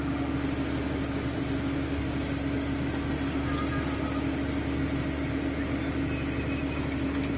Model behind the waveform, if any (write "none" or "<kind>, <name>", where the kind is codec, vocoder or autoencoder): none